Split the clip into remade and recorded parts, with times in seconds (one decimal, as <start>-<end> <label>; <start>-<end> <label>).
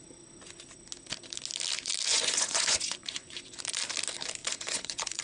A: 0.0-2.1 recorded; 2.1-3.6 remade; 3.6-4.4 recorded; 4.4-5.2 remade